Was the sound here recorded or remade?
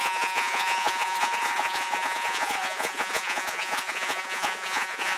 remade